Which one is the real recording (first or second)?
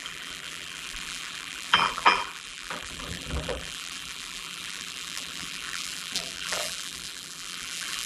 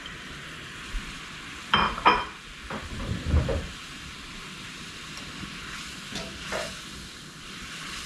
second